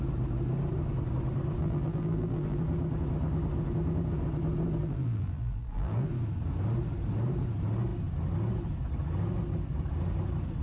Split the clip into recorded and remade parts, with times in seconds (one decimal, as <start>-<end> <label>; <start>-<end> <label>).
0.0-1.6 recorded; 1.6-2.6 remade; 2.6-4.8 recorded; 4.8-6.1 remade; 6.1-10.6 recorded